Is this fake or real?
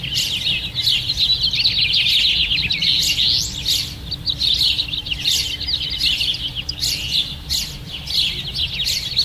real